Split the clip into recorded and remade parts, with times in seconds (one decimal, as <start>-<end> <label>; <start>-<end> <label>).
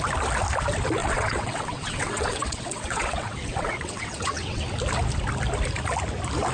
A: 0.0-1.0 recorded; 1.0-4.6 remade; 4.6-6.5 recorded